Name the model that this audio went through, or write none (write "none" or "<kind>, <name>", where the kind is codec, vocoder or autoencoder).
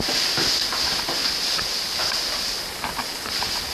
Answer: none